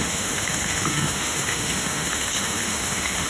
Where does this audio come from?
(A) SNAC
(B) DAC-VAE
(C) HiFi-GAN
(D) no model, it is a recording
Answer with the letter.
B